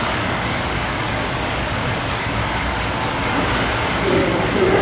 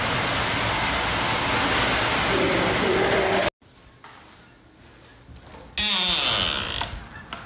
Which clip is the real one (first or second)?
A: second